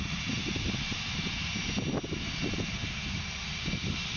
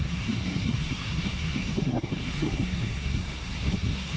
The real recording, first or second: first